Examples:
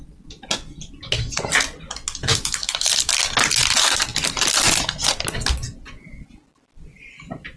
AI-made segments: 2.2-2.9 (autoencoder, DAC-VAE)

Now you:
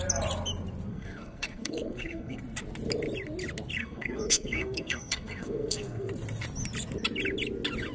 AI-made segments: 0.9-2.4 (codec, SNAC); 3.8-6.1

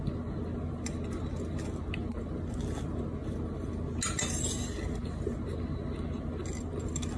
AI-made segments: none

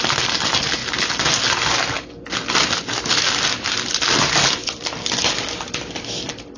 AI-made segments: 0.0-0.8 (vocoder, BigVGAN v2); 3.1-6.6

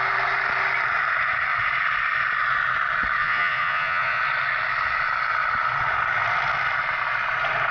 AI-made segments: 3.2-4.2 (vocoder, Vocos)

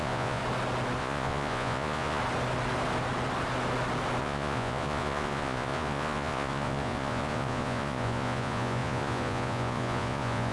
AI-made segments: 0.0-0.4 (vocoder, Vocos); 1.0-2.2; 4.2-10.5

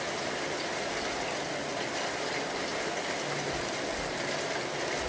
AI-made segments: none

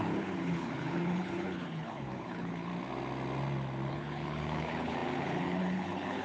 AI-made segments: 0.0-2.7 (codec, HILCodec); 3.9-6.2